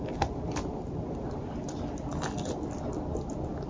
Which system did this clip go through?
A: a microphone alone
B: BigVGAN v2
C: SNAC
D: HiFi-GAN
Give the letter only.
A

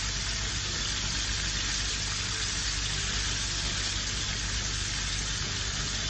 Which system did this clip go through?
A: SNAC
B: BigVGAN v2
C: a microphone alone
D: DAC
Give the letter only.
C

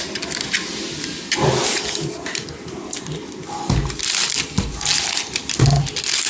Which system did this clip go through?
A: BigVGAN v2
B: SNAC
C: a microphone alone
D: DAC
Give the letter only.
C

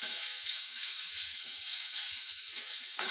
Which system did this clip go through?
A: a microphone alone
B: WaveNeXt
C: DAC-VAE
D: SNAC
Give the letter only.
D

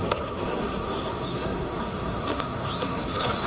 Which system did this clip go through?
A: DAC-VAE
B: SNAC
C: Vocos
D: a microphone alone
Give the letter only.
B